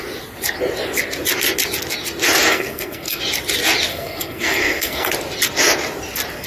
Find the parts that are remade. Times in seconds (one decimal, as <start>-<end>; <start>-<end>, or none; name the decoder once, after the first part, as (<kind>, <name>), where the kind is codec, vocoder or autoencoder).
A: 2.5-3.2 (codec, SNAC); 3.9-5.1